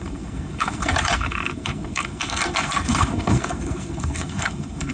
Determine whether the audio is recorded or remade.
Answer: remade